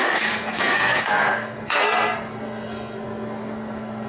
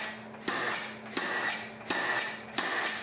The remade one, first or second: first